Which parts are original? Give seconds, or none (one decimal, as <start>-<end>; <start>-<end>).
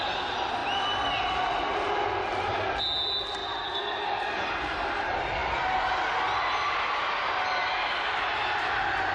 0.0-9.1